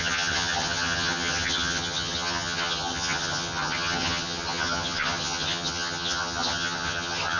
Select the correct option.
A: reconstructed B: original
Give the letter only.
A